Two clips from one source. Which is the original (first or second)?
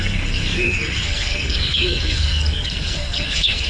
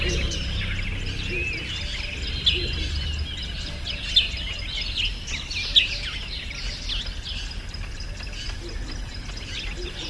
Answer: second